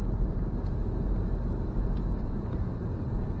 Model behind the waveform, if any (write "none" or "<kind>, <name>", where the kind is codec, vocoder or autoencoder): none